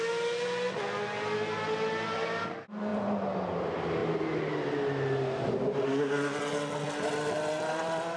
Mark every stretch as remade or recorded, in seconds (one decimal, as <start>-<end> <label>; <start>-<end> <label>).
0.0-8.2 recorded